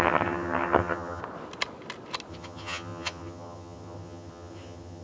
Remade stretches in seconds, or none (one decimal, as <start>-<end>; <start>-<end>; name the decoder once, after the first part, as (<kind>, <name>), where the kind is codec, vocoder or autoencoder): 0.0-1.2 (vocoder, HiFi-GAN); 2.3-5.0